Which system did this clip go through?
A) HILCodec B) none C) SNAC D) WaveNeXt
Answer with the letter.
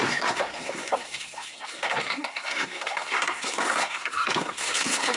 C